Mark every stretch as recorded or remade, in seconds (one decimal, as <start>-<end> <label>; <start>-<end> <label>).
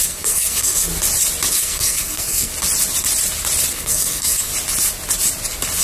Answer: 0.0-0.9 remade; 0.9-1.5 recorded; 1.5-2.5 remade; 2.5-3.7 recorded; 3.7-4.5 remade; 4.5-5.8 recorded